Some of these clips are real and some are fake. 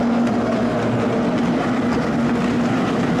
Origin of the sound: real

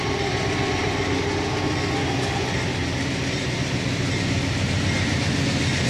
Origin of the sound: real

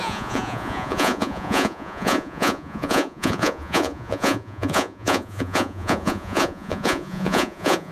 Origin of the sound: fake